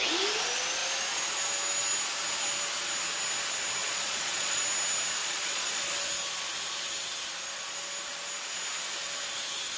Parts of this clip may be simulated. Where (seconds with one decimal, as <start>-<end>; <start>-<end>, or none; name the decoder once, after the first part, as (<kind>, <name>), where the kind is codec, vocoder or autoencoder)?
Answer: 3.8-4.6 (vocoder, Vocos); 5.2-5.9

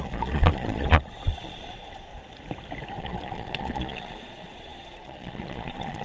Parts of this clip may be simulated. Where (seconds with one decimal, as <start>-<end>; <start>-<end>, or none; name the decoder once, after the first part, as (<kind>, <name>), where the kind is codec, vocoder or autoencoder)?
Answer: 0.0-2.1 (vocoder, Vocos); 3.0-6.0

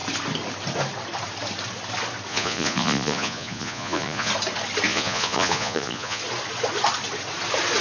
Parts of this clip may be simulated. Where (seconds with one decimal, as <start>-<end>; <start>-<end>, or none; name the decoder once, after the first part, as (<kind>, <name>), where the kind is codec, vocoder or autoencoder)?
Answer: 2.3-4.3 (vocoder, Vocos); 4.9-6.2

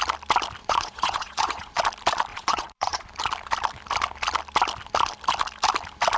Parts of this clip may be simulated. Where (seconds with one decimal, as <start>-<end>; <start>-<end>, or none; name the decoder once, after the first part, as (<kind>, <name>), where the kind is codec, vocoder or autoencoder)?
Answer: 0.6-1.8 (vocoder, Vocos); 2.3-3.1